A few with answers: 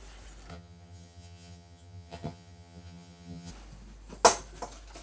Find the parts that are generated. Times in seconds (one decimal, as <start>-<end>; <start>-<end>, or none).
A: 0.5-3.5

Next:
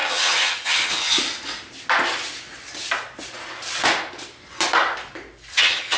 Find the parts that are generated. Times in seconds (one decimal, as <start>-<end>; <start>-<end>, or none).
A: 0.0-1.2; 5.5-6.0

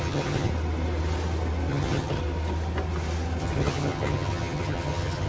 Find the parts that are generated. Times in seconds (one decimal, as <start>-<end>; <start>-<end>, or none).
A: 0.0-0.5; 1.7-2.2; 3.4-5.3